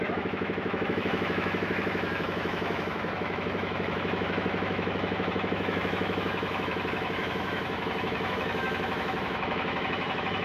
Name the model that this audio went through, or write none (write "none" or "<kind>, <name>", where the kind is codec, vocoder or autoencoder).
autoencoder, DAC-VAE